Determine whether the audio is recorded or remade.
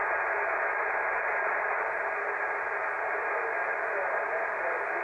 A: recorded